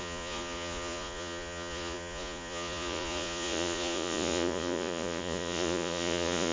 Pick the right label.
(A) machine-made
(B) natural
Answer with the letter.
A